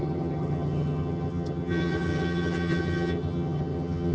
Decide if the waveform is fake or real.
fake